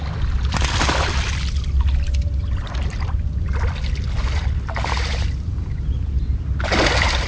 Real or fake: real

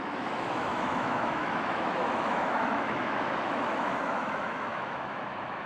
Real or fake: fake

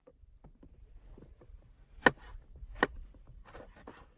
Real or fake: real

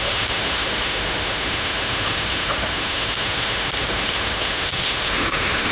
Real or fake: fake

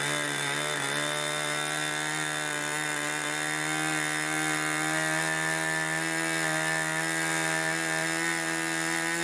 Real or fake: real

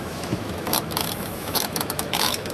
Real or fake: fake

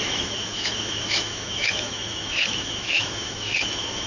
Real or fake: fake